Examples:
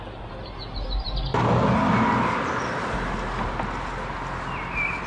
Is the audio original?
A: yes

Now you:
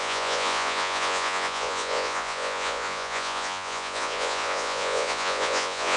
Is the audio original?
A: no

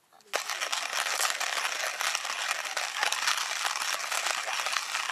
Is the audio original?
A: yes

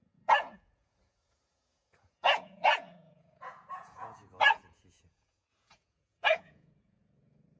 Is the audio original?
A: no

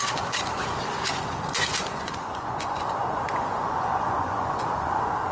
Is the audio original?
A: no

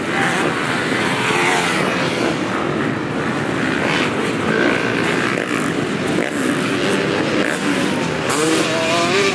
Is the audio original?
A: yes